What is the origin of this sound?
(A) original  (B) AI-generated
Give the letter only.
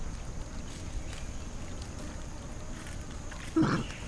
A